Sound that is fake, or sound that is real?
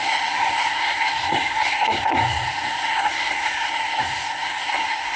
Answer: fake